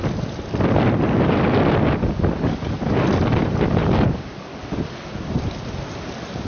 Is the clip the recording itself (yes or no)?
yes